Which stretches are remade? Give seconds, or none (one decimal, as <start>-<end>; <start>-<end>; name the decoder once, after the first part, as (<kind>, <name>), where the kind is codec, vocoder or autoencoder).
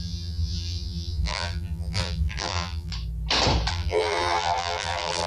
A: 0.0-2.9 (vocoder, BigVGAN v2); 3.7-5.3